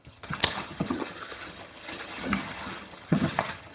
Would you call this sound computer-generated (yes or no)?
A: yes